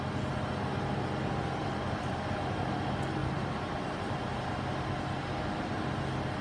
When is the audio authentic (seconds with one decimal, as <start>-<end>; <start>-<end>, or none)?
0.0-1.6; 2.1-3.2; 4.4-6.4